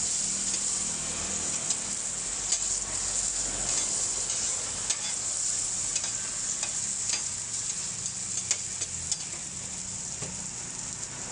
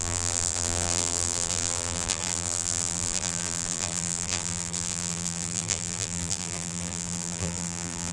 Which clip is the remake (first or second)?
second